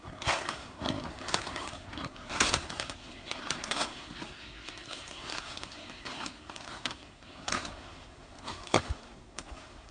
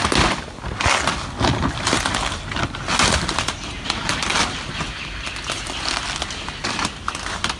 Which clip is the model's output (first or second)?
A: first